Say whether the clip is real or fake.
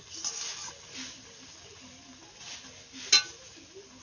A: real